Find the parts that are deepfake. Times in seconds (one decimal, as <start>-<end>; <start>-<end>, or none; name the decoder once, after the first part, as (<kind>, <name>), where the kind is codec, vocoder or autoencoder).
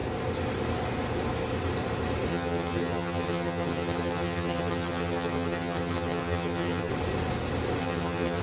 2.3-6.9 (vocoder, HiFi-GAN); 7.8-8.4